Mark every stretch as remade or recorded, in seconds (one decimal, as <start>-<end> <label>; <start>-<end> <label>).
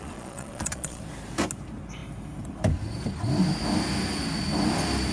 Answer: 0.0-1.0 remade; 1.0-5.1 recorded